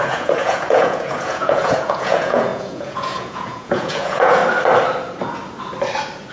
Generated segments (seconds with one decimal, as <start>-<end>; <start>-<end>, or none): 0.0-4.4